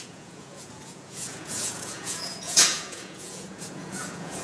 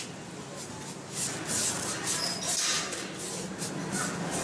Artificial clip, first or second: first